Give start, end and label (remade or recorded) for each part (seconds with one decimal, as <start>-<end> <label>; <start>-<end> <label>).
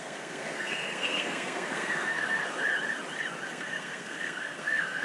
0.0-2.4 remade; 2.4-3.5 recorded; 3.5-5.0 remade